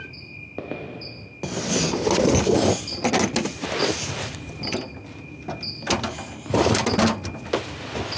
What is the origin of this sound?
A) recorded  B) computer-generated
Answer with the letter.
A